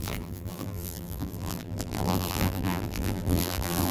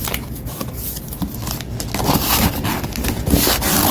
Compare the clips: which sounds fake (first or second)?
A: first